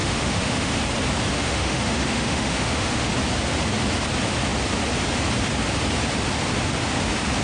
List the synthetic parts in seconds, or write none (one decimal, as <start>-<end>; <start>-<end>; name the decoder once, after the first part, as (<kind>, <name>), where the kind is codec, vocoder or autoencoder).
0.0-0.8 (autoencoder, DAC-VAE); 1.3-3.1